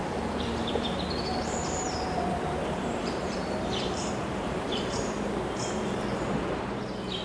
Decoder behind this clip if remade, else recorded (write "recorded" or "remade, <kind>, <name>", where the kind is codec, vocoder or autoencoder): remade, vocoder, BigVGAN v2